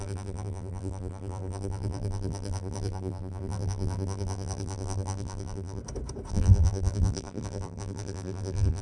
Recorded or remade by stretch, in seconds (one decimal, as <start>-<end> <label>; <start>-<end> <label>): 0.0-5.8 remade; 5.8-6.3 recorded; 6.3-8.8 remade